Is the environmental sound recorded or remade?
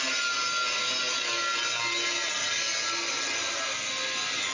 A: recorded